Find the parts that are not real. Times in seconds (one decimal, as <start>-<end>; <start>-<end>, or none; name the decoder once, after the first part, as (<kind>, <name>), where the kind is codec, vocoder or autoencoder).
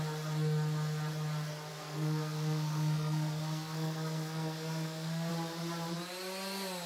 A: 1.7-5.3 (codec, SNAC)